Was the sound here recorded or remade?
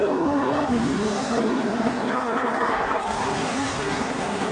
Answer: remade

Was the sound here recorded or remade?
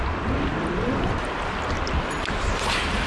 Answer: recorded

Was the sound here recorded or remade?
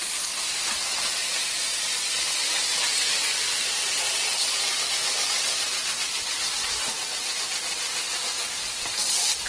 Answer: recorded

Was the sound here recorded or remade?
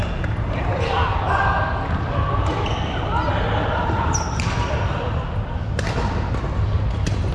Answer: recorded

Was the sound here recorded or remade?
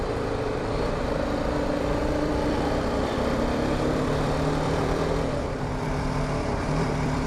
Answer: remade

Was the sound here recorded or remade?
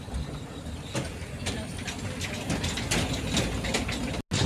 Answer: recorded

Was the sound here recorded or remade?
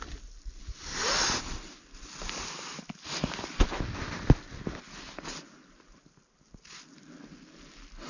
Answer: recorded